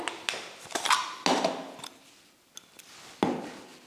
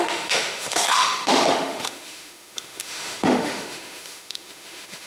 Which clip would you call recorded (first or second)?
first